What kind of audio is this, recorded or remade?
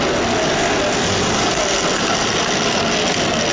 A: recorded